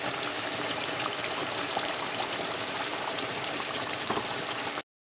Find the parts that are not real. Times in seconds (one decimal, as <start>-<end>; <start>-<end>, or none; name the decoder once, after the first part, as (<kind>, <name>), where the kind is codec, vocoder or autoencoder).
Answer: 1.4-4.1 (vocoder, BigVGAN v2)